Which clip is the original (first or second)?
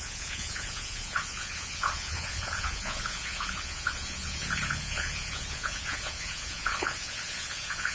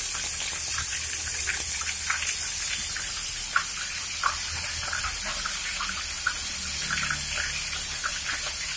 second